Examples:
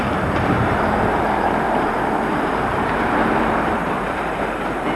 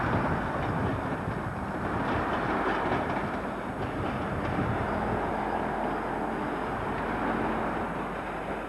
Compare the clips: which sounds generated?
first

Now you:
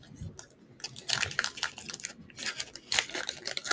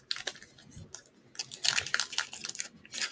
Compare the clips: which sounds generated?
first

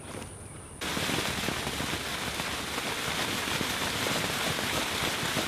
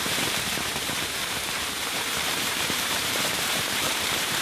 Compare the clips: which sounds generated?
second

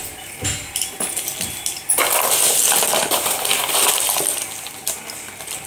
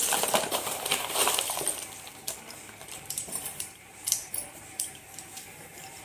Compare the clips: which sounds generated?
second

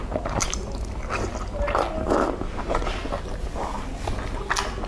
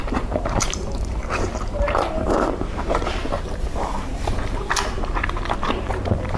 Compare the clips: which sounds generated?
second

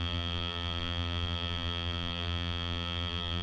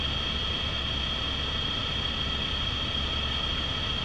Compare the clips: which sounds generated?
first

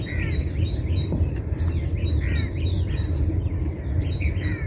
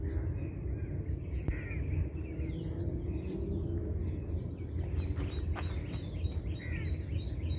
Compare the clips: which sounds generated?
first